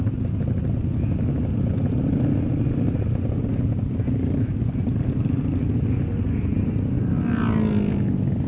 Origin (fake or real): real